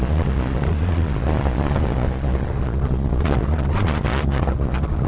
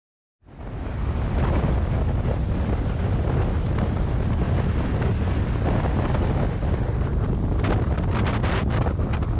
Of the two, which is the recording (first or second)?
second